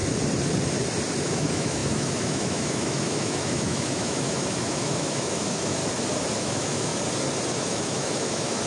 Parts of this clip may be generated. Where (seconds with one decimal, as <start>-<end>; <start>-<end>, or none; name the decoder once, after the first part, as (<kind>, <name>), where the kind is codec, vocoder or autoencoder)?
1.2-5.8 (autoencoder, DAC-VAE); 6.4-6.9; 7.5-8.7